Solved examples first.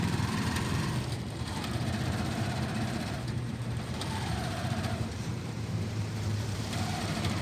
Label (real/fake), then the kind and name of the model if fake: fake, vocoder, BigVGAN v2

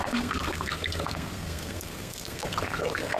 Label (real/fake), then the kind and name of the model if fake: fake, codec, SNAC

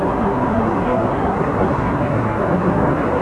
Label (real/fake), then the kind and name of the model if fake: fake, codec, SNAC